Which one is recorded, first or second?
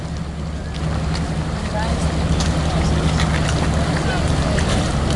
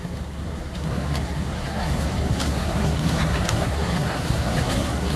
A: first